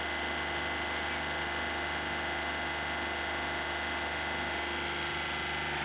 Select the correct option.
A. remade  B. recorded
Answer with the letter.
B